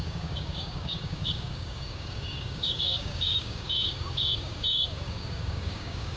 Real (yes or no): no